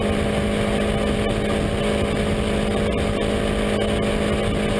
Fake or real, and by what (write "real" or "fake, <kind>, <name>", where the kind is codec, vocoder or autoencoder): real